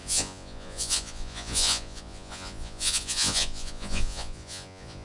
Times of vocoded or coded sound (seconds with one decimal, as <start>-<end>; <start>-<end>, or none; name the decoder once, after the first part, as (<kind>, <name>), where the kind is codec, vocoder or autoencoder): 0.0-5.0 (vocoder, Vocos)